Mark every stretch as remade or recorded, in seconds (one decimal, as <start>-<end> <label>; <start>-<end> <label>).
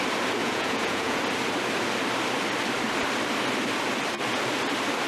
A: 0.0-0.4 recorded; 0.4-1.2 remade; 1.2-5.1 recorded